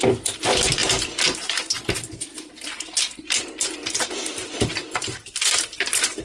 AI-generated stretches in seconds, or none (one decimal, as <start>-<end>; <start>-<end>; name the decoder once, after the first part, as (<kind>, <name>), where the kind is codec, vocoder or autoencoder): none